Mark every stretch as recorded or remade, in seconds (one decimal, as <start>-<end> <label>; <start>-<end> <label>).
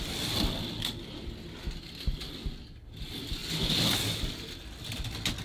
0.0-5.4 recorded